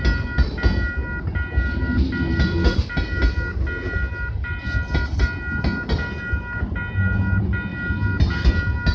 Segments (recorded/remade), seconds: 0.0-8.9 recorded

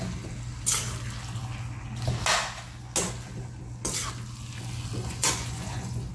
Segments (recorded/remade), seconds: 0.0-5.0 recorded; 5.0-6.1 remade

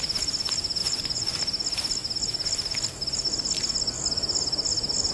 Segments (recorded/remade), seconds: 0.0-0.8 recorded; 0.8-1.4 remade; 1.4-5.1 recorded

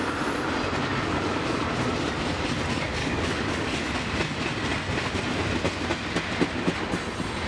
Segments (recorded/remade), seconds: 0.0-0.9 recorded; 0.9-1.6 remade; 1.6-3.0 recorded; 3.0-3.8 remade; 3.8-7.5 recorded